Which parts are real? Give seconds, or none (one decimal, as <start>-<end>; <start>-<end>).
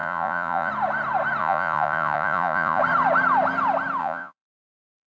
0.7-1.4; 2.8-4.0